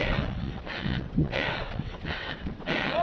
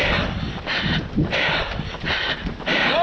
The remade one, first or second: first